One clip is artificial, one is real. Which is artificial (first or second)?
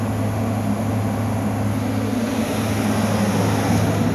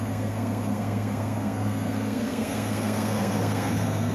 second